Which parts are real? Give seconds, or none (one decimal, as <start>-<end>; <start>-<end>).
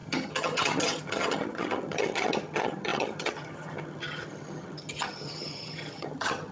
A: none